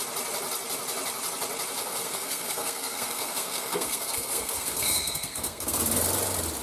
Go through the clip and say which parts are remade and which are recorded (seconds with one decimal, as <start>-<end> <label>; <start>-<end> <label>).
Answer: 0.0-1.8 recorded; 1.8-5.8 remade; 5.8-6.6 recorded